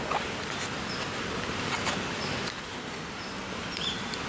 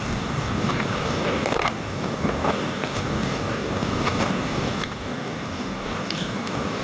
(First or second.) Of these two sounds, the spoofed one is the second